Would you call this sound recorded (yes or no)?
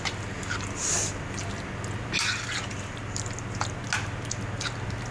yes